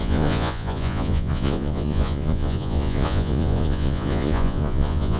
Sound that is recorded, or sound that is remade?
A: remade